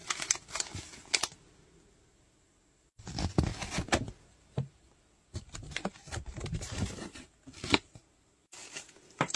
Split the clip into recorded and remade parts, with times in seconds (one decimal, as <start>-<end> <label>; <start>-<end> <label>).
0.0-6.0 recorded; 6.0-7.4 remade; 7.4-9.4 recorded